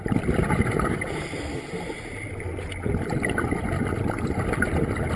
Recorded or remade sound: recorded